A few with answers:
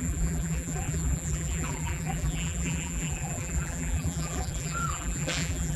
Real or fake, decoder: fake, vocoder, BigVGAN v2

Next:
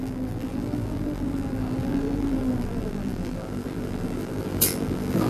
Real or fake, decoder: fake, vocoder, BigVGAN v2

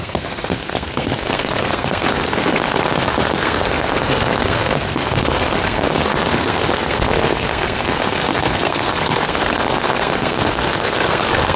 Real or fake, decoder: fake, codec, SNAC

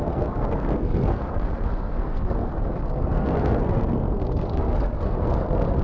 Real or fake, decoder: fake, codec, SNAC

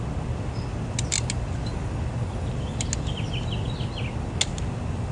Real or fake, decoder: real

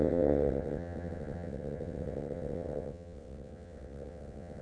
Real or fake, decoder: fake, vocoder, WaveNeXt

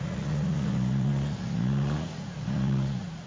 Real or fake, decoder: fake, vocoder, Vocos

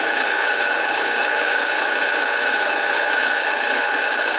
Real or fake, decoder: fake, codec, HILCodec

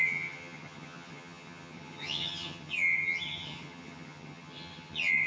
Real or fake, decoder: fake, vocoder, HiFi-GAN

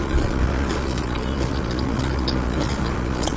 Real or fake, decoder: fake, vocoder, Vocos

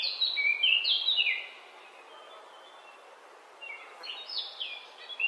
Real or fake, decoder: real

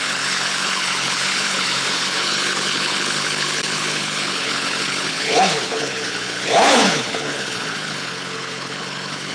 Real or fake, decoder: fake, codec, HILCodec